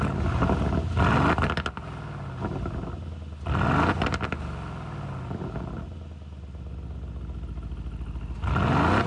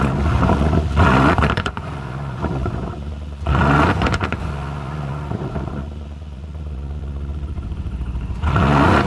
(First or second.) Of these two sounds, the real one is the first